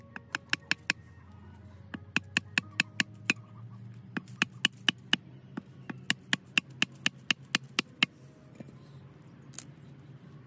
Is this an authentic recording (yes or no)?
yes